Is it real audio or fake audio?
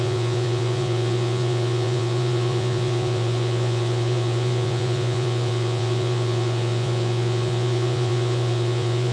fake